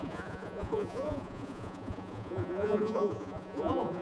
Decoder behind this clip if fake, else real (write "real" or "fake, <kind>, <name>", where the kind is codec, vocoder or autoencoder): fake, vocoder, Vocos